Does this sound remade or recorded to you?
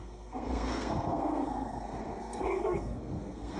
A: remade